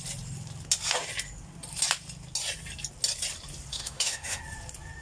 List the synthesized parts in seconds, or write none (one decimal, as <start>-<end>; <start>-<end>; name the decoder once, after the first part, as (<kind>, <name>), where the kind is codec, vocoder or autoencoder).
3.7-4.4 (autoencoder, DAC-VAE)